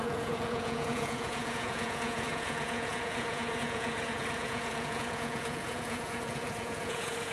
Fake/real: fake